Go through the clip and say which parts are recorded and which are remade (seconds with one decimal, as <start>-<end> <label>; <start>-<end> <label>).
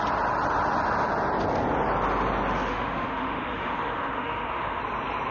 0.0-2.7 recorded; 2.7-4.8 remade; 4.8-5.3 recorded